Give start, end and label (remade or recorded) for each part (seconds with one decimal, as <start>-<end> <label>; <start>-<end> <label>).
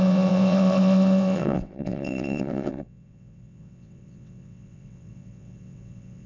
0.0-6.3 remade